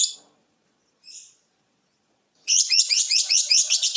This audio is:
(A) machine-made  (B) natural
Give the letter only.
A